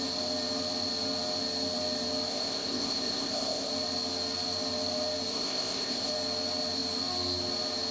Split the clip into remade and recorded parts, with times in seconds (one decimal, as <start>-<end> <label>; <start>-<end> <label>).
0.0-2.3 recorded; 2.3-3.7 remade; 3.7-5.3 recorded; 5.3-6.1 remade; 6.1-7.9 recorded